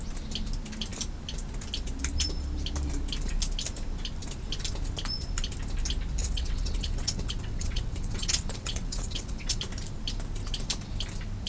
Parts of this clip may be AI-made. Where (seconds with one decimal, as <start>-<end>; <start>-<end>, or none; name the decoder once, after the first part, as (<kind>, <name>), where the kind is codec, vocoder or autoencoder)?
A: 6.2-9.6 (vocoder, WaveNeXt)